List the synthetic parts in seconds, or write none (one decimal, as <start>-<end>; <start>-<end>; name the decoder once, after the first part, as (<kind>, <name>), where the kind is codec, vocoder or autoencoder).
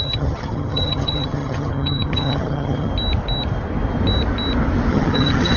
0.0-2.9 (vocoder, HiFi-GAN); 4.9-5.6